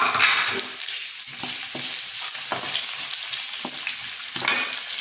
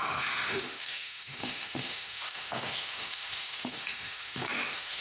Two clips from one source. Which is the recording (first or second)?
first